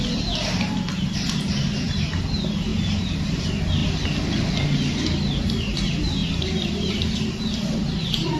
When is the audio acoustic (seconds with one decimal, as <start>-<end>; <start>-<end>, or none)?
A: 0.0-2.7; 3.4-7.8